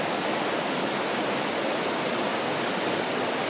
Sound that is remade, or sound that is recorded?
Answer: recorded